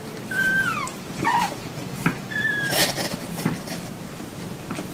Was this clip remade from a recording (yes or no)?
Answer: yes